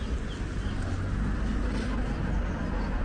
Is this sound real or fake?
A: real